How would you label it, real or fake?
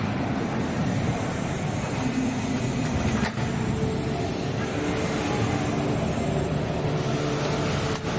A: real